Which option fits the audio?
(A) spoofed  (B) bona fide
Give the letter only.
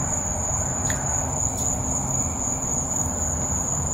B